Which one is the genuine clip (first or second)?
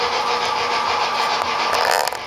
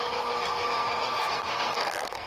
first